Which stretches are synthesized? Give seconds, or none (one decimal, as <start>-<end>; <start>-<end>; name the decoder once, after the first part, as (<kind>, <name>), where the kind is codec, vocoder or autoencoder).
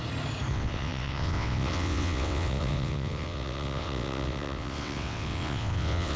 0.5-6.2 (vocoder, WaveNeXt)